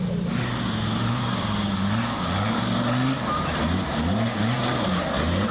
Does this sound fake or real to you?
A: real